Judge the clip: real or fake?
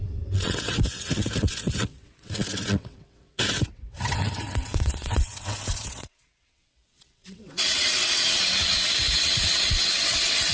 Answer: fake